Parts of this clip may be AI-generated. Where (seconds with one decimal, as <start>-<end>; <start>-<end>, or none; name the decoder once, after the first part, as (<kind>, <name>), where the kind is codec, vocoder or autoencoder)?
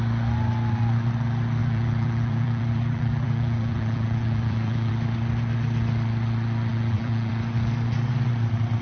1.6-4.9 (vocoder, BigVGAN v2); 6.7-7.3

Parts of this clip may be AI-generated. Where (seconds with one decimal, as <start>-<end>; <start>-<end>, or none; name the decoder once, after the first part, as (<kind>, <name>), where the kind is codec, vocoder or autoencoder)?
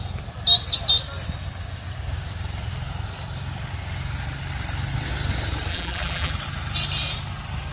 5.7-6.3 (vocoder, BigVGAN v2)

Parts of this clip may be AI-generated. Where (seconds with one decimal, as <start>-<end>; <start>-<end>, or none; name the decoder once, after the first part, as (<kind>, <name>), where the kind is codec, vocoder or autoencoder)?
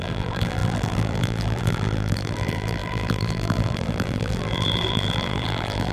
0.0-5.9 (vocoder, BigVGAN v2)